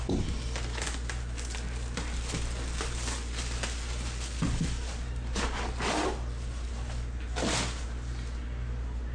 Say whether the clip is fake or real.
real